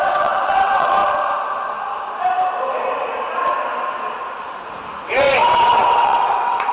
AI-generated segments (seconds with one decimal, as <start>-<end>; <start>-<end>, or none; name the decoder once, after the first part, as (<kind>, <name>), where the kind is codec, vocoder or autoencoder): 0.0-1.0 (vocoder, WaveNeXt); 5.0-6.7